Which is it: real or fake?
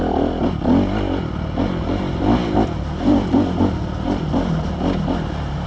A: real